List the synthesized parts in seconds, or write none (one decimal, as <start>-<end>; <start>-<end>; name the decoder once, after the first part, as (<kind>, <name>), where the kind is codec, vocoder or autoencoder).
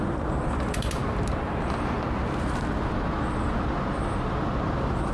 none